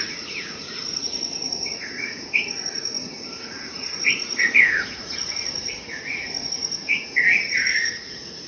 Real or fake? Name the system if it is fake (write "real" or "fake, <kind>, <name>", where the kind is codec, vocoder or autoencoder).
fake, vocoder, Vocos